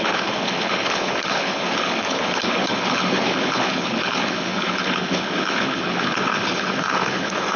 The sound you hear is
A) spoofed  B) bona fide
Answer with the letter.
A